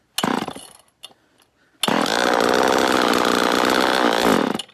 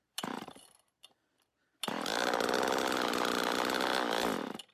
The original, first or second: first